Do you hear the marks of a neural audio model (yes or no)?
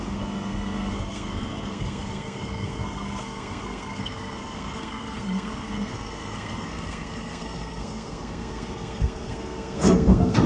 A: yes